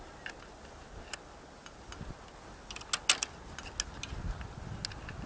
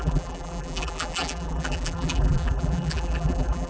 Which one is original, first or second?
first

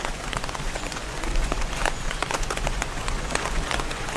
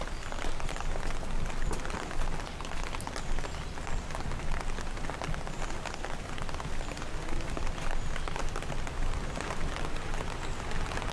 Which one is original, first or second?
second